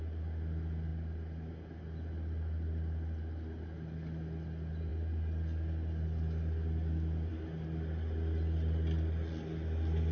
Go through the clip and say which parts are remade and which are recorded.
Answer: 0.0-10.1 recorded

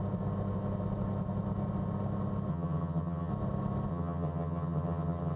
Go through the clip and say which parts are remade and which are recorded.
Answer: 0.0-2.5 recorded; 2.5-3.3 remade; 3.3-3.9 recorded; 3.9-5.4 remade